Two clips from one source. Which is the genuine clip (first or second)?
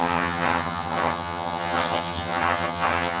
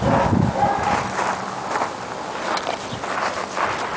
second